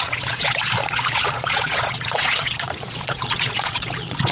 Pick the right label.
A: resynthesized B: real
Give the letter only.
A